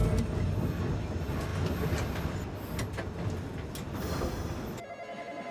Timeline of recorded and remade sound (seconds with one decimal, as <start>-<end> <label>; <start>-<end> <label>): 0.0-5.5 recorded